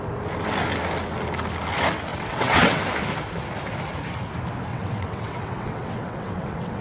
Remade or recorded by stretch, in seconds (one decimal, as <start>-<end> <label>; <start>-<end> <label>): 0.0-2.1 recorded; 2.1-2.8 remade; 2.8-4.7 recorded; 4.7-6.8 remade